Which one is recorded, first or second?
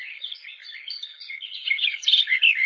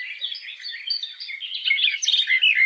second